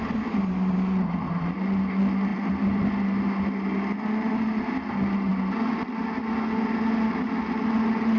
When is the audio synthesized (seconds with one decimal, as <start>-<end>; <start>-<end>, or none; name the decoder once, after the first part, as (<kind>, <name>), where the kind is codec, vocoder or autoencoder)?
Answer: 2.3-2.9 (vocoder, BigVGAN v2)